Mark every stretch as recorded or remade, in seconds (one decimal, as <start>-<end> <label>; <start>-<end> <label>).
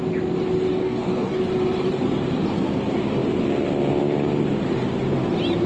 0.0-0.7 recorded; 0.7-1.4 remade; 1.4-5.7 recorded